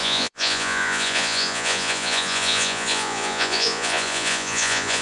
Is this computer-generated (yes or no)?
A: yes